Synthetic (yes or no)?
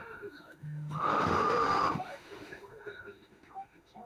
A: yes